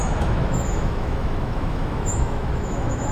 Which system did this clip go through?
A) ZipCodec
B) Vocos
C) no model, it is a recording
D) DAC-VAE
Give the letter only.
D